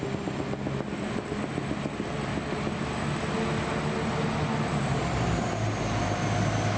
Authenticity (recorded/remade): recorded